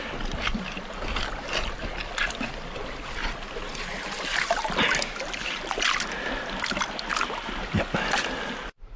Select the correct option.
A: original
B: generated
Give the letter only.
A